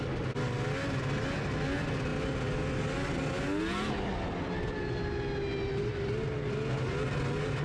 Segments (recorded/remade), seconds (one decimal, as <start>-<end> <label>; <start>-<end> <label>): 0.0-7.6 recorded